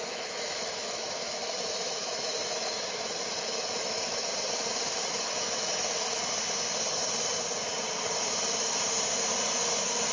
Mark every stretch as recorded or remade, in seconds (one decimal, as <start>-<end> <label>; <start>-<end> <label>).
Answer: 0.0-4.3 remade; 4.3-5.0 recorded; 5.0-6.3 remade; 6.3-10.1 recorded